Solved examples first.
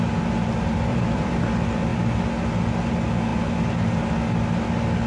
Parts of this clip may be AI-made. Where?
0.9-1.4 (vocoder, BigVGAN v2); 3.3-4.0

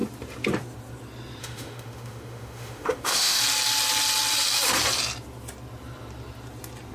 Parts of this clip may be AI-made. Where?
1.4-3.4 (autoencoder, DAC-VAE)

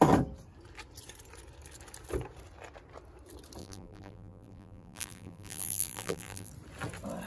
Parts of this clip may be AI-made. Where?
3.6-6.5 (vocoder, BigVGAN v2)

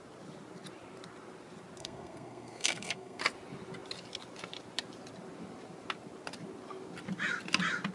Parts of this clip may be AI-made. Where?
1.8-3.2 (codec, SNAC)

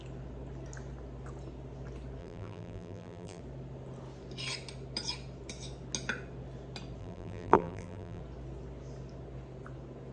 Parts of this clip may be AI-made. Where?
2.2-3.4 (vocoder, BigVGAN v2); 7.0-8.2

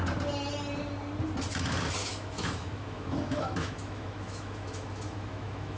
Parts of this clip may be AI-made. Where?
2.0-5.8 (autoencoder, DAC-VAE)